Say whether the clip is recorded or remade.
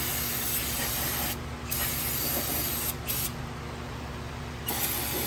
recorded